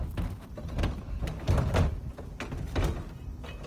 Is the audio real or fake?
real